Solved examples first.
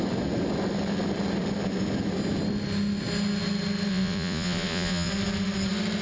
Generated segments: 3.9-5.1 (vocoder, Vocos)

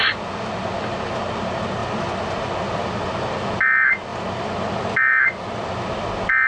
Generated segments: none

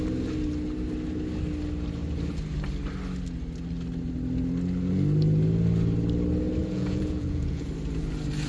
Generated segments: 6.6-7.7 (vocoder, Vocos)